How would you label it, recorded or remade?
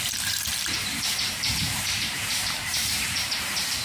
remade